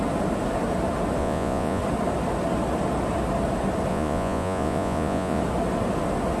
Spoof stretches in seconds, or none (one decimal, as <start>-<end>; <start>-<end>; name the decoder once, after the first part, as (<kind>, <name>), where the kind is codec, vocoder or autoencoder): 1.2-1.8 (vocoder, Vocos); 3.9-5.4